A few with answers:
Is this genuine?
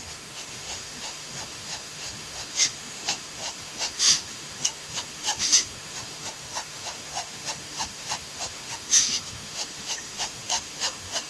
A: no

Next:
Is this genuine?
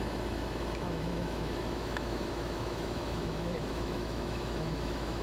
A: no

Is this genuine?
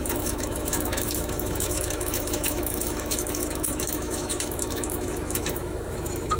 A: no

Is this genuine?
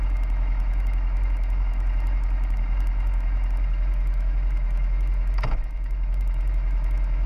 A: no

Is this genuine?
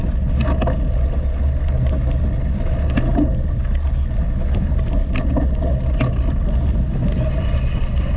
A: yes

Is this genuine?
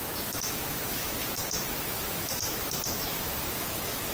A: no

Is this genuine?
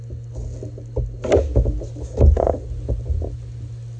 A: yes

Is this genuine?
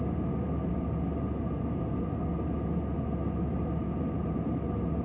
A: yes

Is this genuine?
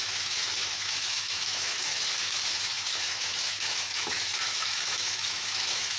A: no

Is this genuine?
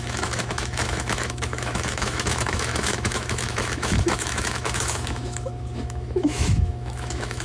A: no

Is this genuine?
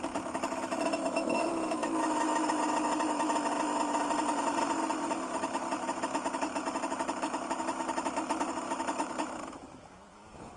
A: no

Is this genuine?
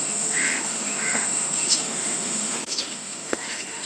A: no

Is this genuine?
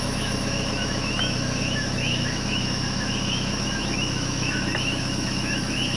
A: no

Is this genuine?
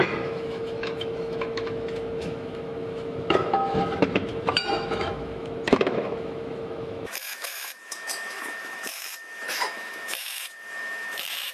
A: no